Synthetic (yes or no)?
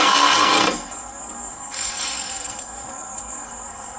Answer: yes